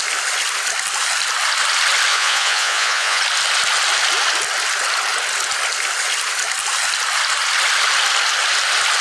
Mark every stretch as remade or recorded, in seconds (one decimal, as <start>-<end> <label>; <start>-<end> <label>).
0.0-2.1 recorded; 2.1-3.2 remade; 3.2-9.0 recorded